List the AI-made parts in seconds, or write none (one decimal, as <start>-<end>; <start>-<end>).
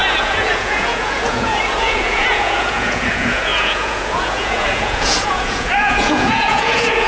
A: 0.0-7.1